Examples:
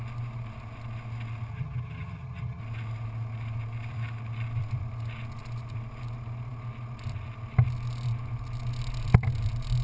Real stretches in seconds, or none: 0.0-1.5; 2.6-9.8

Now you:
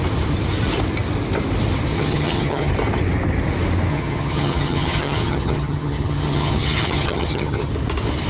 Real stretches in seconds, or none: 0.0-1.9; 2.7-3.9; 7.7-8.3